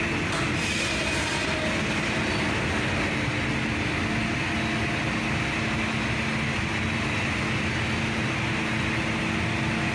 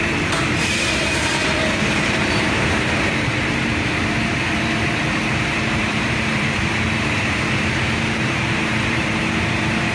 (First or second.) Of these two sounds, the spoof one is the second